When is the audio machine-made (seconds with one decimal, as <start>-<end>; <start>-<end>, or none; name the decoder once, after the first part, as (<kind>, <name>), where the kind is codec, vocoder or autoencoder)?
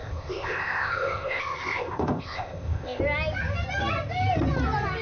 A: 0.0-3.0 (codec, ZipCodec)